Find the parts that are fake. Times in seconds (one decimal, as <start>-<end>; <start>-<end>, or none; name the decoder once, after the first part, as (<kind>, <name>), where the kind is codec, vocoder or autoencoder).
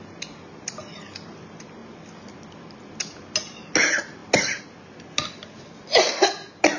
none